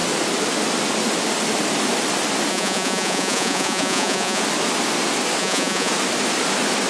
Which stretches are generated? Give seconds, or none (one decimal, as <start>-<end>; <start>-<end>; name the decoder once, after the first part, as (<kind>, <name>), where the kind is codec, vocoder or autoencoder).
2.5-4.4 (vocoder, Vocos); 5.4-5.9